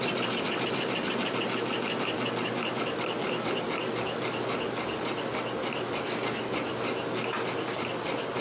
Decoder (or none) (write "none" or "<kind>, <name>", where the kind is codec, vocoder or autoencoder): none